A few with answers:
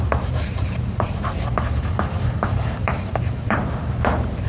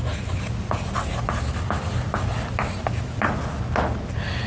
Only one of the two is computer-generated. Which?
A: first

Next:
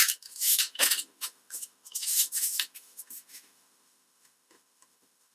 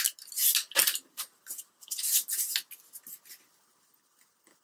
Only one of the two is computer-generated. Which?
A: first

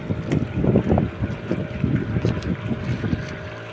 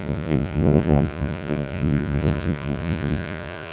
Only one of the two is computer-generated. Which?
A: second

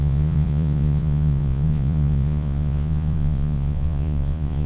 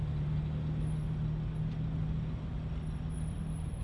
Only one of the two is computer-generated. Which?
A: first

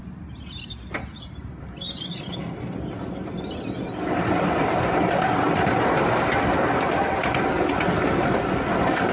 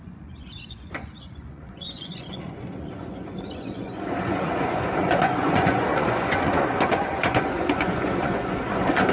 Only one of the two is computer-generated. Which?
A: second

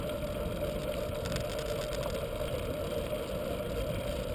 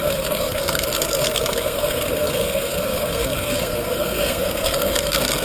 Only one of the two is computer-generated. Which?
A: second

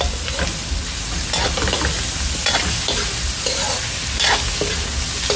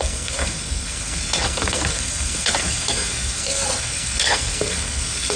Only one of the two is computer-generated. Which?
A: second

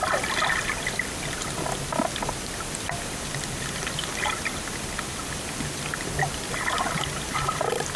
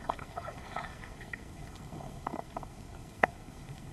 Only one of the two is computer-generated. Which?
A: second